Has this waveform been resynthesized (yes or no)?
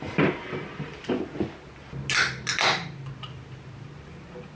no